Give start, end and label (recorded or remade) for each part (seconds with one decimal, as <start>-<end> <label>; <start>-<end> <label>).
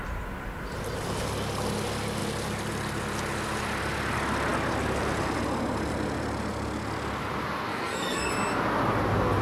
0.0-7.7 recorded; 7.7-8.3 remade; 8.3-9.4 recorded